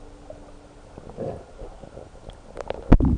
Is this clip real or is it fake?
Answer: real